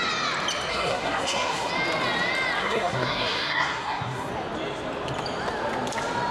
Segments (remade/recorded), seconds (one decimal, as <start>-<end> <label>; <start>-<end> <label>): 0.0-0.7 recorded; 0.7-1.7 remade; 1.7-2.6 recorded; 2.6-4.3 remade; 4.3-6.3 recorded